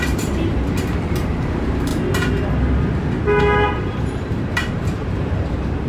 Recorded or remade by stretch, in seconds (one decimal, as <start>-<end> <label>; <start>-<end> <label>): 0.0-1.9 remade; 1.9-3.4 recorded; 3.4-5.9 remade